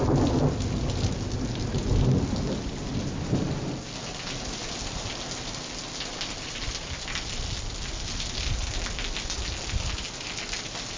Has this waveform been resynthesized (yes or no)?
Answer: no